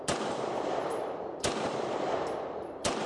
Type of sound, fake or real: real